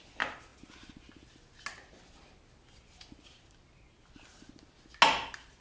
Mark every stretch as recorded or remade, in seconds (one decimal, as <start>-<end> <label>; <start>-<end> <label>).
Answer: 0.0-5.6 recorded